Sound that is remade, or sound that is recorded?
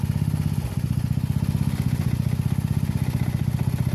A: recorded